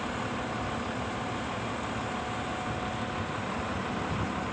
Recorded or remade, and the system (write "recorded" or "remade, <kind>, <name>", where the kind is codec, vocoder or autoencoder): recorded